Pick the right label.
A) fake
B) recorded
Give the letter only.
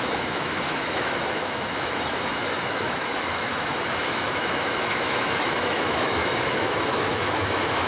A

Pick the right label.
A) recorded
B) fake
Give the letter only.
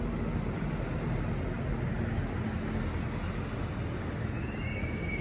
A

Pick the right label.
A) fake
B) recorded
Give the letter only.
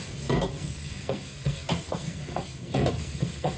A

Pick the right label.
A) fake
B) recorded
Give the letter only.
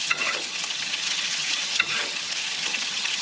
A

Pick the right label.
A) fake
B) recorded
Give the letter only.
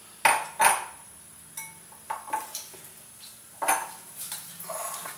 B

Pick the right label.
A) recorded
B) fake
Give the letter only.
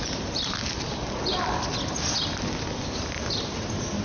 A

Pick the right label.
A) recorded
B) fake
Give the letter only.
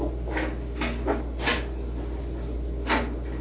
A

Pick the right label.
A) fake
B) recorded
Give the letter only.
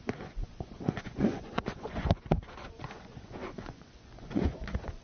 A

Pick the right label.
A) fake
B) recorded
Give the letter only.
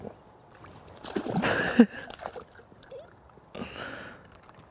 B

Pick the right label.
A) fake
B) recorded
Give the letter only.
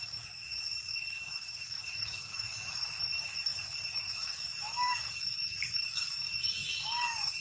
A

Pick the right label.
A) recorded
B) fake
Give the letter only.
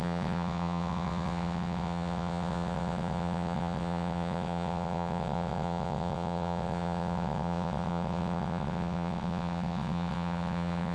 B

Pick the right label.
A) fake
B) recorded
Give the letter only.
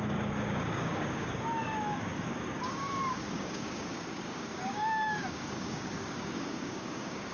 A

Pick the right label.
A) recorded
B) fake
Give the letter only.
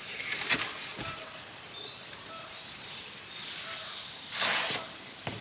A